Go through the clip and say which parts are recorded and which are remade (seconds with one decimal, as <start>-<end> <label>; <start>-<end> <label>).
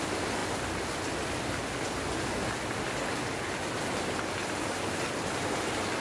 0.0-6.0 recorded